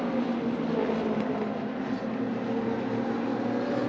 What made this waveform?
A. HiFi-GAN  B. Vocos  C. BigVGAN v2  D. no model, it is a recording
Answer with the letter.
D